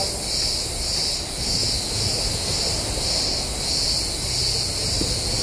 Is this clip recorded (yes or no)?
yes